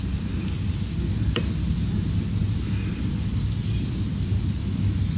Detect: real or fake real